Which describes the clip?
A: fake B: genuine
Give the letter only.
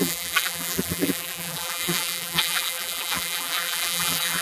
A